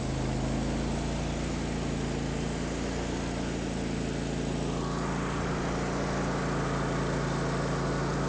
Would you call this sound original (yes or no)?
yes